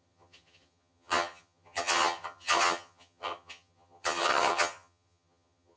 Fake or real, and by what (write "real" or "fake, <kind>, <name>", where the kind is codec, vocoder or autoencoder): fake, vocoder, HiFi-GAN